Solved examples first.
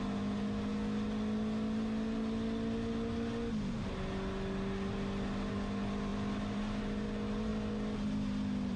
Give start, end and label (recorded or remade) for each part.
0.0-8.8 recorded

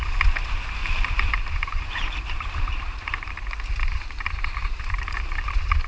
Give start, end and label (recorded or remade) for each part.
0.0-0.8 recorded; 0.8-3.3 remade; 3.3-4.6 recorded; 4.6-5.9 remade

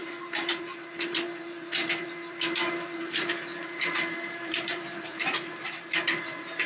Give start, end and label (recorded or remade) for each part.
0.0-6.7 remade